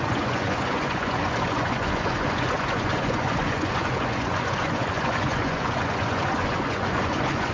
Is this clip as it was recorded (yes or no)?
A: no